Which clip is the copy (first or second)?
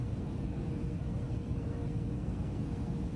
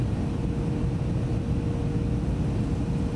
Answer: first